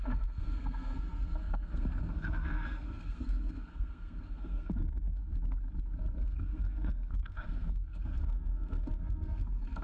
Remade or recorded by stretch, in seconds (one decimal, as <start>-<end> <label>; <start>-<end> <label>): 0.0-5.2 remade; 5.2-6.2 recorded; 6.2-9.8 remade